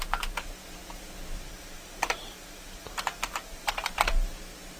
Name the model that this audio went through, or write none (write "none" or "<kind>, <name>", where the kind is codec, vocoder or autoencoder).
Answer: vocoder, BigVGAN v2